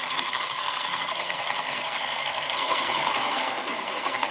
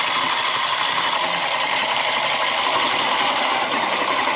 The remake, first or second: first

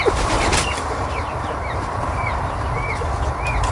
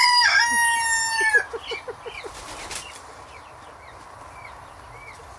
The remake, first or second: first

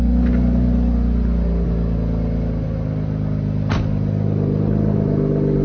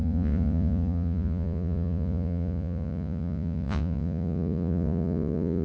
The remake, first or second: second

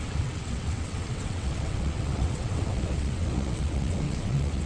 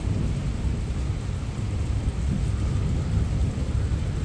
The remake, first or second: first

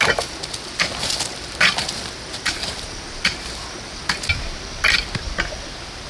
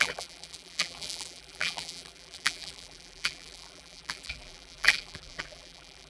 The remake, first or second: second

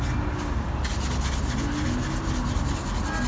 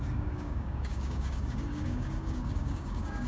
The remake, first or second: second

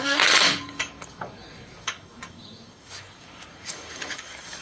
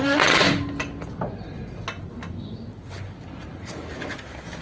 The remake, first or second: first